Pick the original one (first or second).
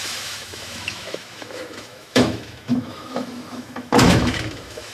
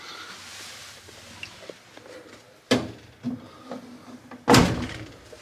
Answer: second